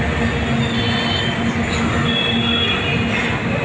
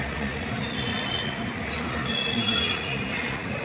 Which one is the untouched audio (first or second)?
first